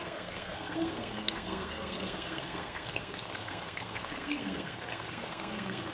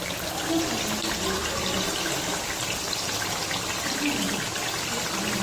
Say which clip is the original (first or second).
second